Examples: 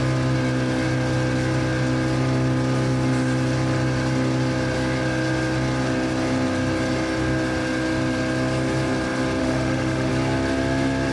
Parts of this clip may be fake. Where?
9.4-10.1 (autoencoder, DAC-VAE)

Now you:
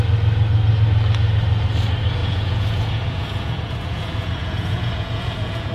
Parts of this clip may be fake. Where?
2.2-5.7 (vocoder, Vocos)

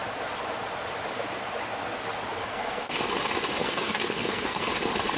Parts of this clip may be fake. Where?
2.4-3.0 (codec, SNAC); 3.6-4.7

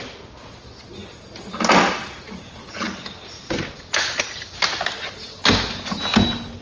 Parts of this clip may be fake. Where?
none